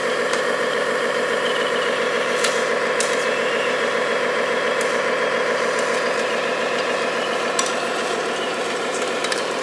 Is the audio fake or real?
fake